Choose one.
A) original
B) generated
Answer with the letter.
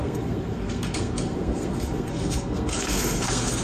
B